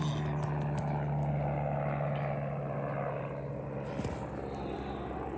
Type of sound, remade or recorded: recorded